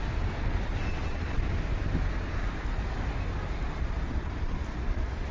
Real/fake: real